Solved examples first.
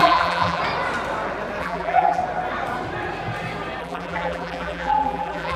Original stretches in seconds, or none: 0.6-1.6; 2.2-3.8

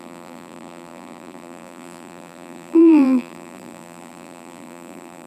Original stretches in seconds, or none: none

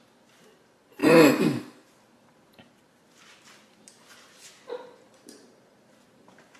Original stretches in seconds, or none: 0.0-6.6

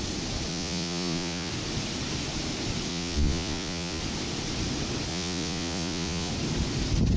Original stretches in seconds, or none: 0.0-0.5; 1.5-2.9; 4.0-5.1; 6.3-7.2

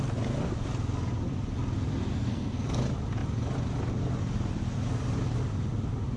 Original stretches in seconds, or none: 0.0-2.1; 2.8-6.2

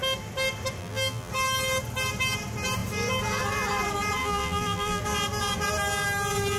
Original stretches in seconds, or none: 0.0-0.8; 1.3-4.2; 5.0-6.6

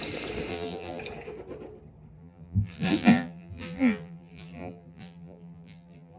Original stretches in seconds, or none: 0.0-0.5; 1.0-2.2